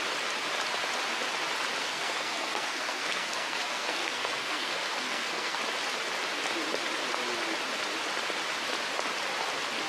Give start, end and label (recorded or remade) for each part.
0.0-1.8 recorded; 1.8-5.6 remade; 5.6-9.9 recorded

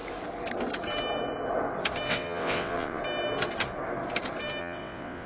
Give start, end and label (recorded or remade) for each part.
0.0-2.1 recorded; 2.1-3.0 remade; 3.0-4.6 recorded; 4.6-5.3 remade

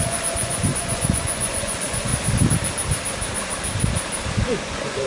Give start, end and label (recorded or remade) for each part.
0.0-2.1 remade; 2.1-4.6 recorded; 4.6-5.1 remade